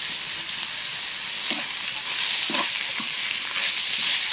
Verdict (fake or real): real